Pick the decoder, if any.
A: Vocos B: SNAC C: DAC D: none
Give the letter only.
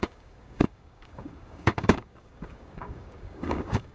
C